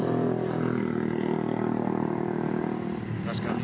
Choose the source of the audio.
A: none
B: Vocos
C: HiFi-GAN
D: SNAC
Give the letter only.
A